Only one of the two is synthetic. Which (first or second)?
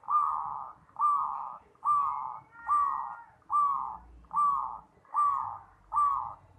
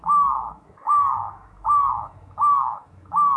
second